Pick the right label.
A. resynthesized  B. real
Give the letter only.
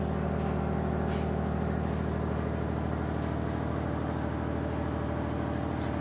B